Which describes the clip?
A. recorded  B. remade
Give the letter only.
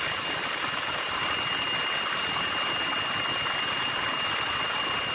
A